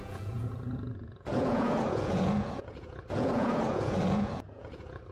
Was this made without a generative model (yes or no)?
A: no